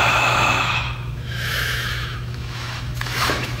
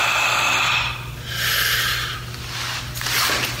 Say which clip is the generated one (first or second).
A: first